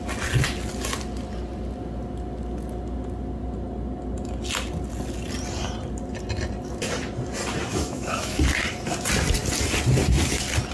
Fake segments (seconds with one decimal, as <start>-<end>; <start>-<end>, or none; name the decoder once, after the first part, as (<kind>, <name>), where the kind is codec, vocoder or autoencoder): 7.7-8.4 (autoencoder, DAC-VAE)